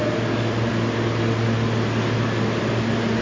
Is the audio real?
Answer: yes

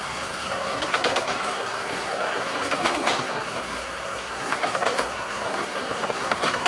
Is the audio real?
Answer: no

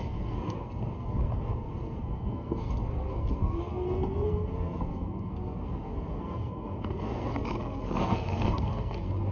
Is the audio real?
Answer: no